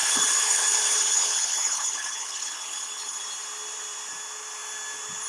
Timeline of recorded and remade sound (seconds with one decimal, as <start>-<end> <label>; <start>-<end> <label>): 0.0-3.2 remade; 3.2-5.3 recorded